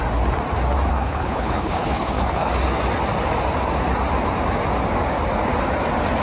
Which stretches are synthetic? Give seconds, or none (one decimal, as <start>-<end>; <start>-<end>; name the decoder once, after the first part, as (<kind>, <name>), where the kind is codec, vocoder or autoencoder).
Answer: 0.9-2.5 (codec, HILCodec)